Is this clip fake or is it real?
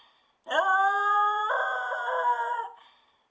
fake